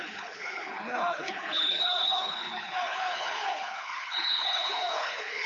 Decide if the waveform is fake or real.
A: fake